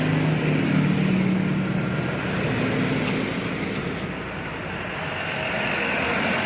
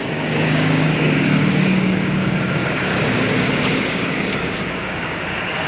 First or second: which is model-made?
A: second